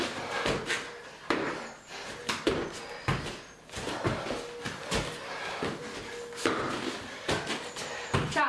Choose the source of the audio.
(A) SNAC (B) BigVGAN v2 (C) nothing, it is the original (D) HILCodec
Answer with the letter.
C